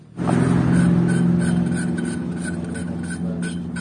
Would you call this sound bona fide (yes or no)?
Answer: yes